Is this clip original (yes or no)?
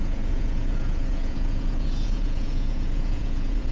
no